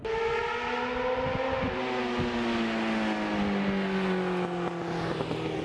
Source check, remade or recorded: recorded